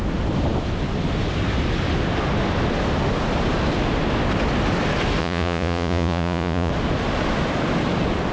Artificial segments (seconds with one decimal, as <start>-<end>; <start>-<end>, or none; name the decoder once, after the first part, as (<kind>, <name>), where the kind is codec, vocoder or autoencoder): 5.2-6.7 (vocoder, Vocos)